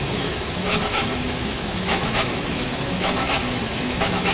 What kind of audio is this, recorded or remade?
remade